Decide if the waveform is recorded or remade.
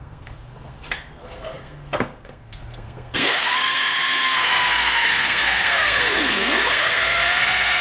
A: remade